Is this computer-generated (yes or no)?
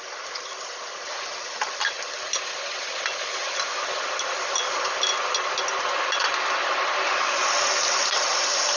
no